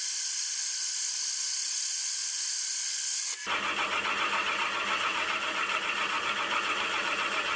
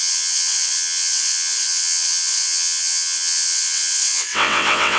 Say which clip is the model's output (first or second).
second